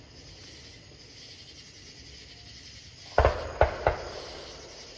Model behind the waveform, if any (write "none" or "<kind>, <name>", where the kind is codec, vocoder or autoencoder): none